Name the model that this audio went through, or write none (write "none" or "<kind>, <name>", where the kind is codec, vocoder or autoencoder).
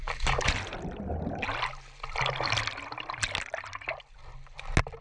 none